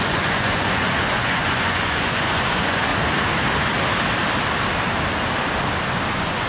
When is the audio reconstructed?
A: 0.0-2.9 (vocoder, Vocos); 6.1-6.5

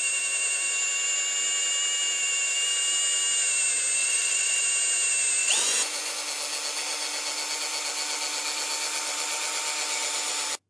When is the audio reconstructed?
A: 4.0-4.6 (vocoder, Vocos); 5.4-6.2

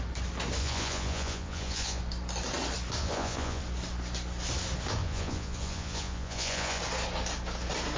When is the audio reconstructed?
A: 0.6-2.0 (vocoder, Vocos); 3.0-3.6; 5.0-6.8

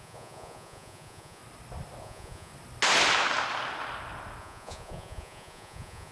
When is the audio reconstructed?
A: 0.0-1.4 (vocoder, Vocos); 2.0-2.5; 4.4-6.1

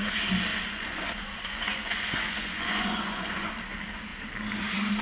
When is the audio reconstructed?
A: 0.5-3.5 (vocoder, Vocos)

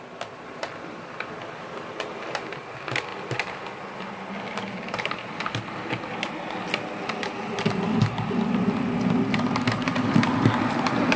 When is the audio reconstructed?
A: none